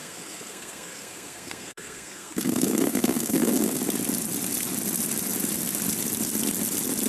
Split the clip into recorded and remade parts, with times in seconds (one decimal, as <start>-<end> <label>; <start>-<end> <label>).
0.0-3.8 remade; 3.8-7.1 recorded